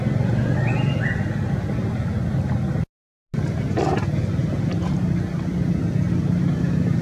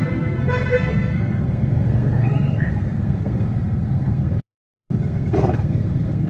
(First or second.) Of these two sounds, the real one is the first